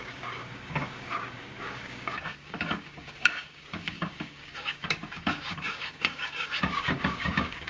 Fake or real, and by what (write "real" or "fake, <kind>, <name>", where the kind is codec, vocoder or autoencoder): fake, codec, DAC